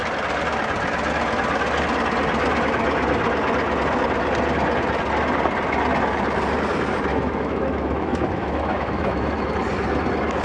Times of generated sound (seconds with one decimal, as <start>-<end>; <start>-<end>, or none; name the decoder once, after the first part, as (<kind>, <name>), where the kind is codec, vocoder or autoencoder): 7.1-9.2 (autoencoder, DAC-VAE)